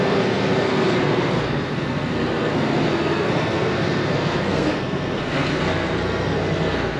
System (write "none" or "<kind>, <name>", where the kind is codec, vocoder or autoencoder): codec, SNAC